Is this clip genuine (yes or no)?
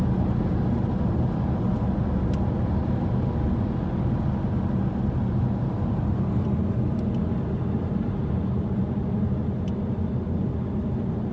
yes